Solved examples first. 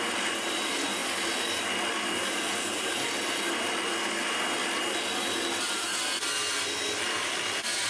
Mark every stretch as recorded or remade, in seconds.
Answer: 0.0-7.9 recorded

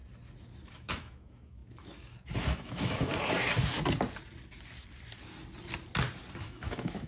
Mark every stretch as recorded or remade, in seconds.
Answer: 0.0-0.7 recorded; 0.7-3.1 remade; 3.1-6.4 recorded; 6.4-7.1 remade